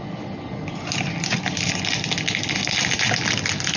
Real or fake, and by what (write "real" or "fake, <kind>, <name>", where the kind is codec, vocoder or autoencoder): real